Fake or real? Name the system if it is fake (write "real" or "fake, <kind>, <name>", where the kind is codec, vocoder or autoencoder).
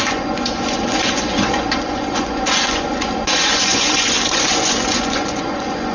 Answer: fake, vocoder, Vocos